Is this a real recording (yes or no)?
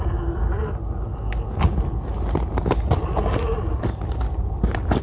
yes